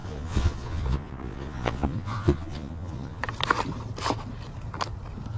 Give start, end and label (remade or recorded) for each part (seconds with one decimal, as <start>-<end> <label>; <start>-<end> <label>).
0.0-3.2 remade; 3.2-5.4 recorded